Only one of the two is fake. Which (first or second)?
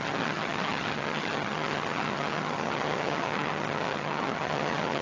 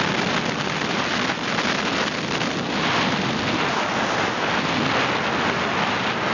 first